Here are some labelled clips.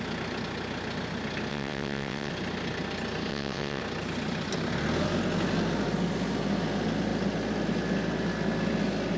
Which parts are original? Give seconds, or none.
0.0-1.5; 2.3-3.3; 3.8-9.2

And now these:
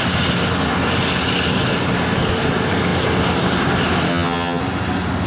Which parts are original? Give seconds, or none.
0.0-4.1; 4.6-5.3

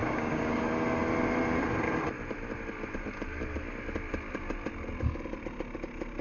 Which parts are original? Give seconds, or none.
0.6-6.2

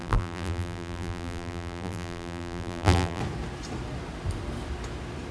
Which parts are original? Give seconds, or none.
3.2-5.3

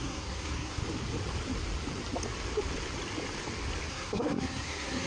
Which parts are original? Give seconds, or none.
0.8-3.9

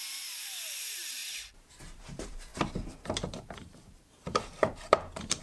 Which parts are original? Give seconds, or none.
1.2-1.8

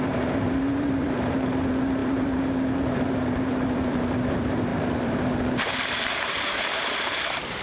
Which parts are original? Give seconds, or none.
none